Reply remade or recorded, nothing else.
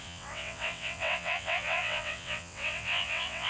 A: remade